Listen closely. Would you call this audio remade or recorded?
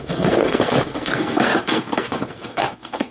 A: remade